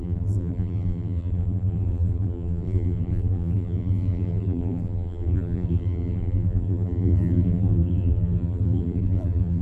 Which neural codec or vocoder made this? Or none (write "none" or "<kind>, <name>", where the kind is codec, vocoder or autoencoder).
vocoder, BigVGAN v2